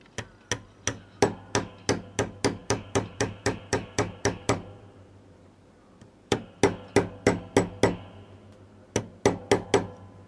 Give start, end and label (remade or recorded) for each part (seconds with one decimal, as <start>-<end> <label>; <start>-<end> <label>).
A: 0.0-2.6 recorded; 2.6-6.5 remade; 6.5-10.3 recorded